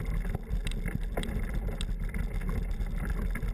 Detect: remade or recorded recorded